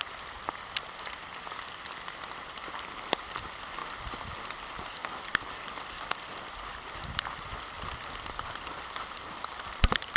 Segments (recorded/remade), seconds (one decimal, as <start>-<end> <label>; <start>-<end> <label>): 0.0-10.2 recorded